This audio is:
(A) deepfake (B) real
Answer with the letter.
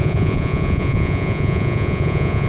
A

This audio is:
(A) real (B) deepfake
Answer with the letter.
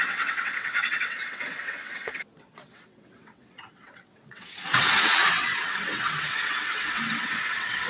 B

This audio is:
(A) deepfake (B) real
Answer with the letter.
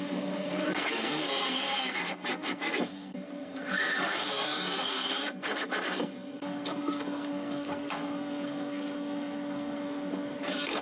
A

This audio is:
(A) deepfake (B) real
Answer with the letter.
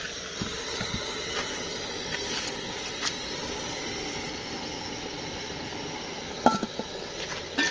B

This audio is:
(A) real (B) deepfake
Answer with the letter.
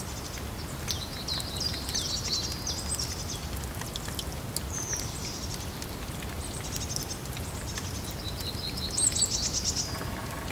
A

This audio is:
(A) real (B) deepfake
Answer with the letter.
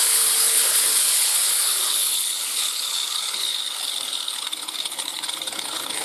B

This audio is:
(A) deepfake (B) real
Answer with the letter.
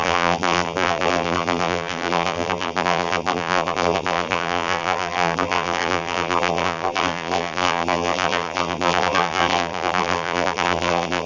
A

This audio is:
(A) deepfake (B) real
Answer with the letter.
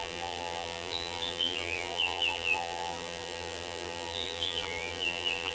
A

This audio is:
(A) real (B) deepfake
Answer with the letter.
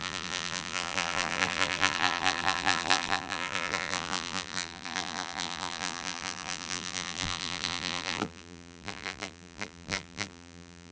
B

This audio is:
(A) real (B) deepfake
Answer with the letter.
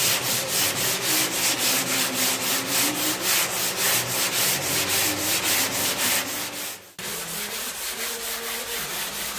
A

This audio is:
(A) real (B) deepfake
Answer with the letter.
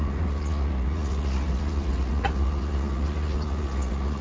B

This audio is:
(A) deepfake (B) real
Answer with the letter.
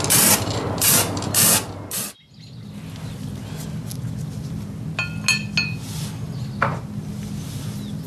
B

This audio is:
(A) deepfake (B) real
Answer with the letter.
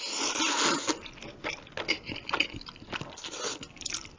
B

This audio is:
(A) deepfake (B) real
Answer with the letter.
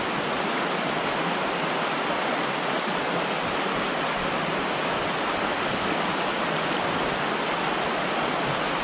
B